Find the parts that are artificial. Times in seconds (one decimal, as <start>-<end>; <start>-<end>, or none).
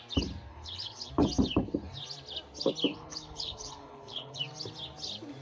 0.5-1.1; 2.9-4.4